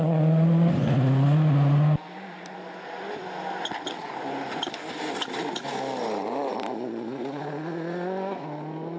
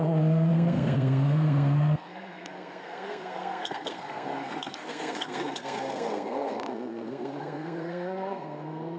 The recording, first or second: first